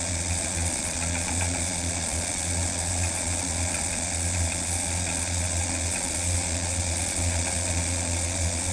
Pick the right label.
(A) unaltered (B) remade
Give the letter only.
B